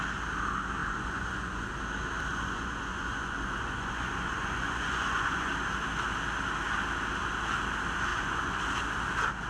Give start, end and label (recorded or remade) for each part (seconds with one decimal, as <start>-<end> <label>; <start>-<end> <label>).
0.0-0.8 recorded; 0.8-1.7 remade; 1.7-2.3 recorded; 2.3-5.5 remade; 5.5-8.1 recorded; 8.1-8.6 remade; 8.6-9.5 recorded